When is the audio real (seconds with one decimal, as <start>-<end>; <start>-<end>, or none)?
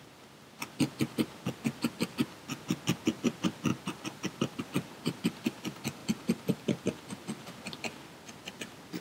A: 0.0-9.0